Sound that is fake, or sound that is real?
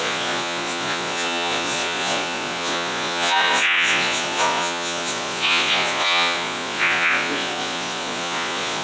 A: fake